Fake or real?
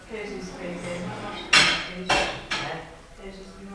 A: real